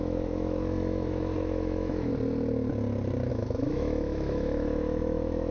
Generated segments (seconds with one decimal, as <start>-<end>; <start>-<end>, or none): 0.0-2.1; 3.3-5.5